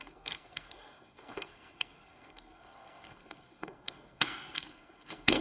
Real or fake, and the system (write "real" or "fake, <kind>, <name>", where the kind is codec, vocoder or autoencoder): fake, codec, SNAC